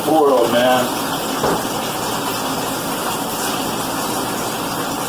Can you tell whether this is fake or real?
fake